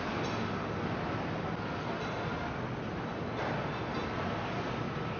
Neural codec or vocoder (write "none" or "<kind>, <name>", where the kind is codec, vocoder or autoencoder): none